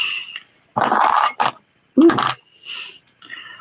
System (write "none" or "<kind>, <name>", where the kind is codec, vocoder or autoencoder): none